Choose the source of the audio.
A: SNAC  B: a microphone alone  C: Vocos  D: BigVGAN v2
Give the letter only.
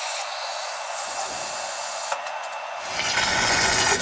C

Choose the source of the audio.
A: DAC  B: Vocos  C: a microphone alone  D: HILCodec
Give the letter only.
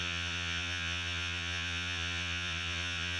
B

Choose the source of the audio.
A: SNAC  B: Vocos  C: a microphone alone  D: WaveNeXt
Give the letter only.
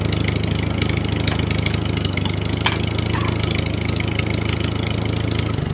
C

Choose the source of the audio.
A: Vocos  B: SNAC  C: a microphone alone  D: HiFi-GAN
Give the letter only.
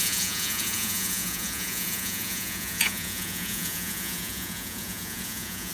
A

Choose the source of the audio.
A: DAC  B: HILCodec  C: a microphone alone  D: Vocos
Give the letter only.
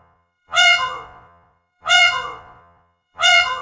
D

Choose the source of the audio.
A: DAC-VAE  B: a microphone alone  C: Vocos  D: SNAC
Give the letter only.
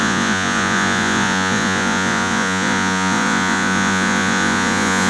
C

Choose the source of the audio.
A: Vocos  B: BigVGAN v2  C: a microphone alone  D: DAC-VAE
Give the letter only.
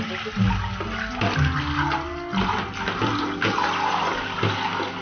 C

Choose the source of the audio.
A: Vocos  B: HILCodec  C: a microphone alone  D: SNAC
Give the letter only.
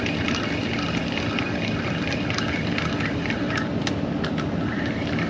C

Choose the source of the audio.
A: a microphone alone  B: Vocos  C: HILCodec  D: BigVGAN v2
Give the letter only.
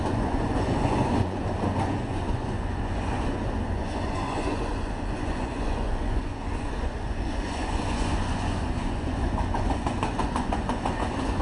B